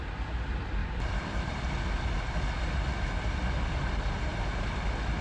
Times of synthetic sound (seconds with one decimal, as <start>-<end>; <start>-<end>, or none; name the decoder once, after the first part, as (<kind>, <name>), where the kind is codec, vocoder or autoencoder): 0.8-1.7 (vocoder, BigVGAN v2); 4.3-4.8